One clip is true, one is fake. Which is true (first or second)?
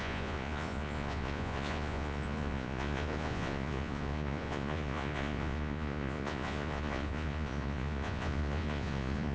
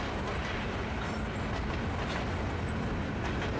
second